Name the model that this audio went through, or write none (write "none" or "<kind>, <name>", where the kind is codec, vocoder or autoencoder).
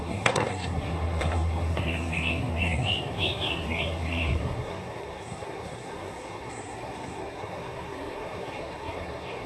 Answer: codec, SNAC